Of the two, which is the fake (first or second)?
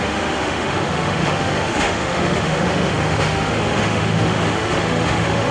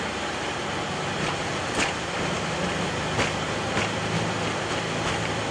first